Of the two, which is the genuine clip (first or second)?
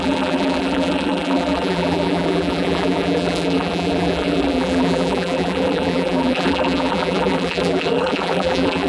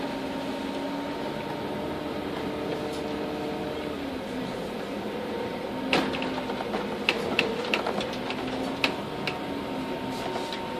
second